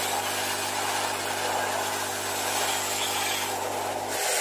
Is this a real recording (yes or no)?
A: yes